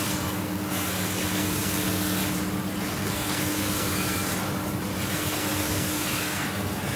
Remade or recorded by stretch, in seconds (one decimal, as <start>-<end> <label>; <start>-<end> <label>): 0.0-2.2 remade; 2.2-2.8 recorded; 2.8-4.3 remade; 4.3-5.1 recorded; 5.1-7.0 remade